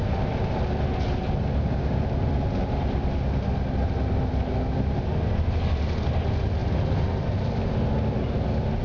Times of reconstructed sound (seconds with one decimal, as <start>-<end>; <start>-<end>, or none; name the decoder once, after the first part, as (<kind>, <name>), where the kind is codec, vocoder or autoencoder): 6.6-7.3 (vocoder, BigVGAN v2)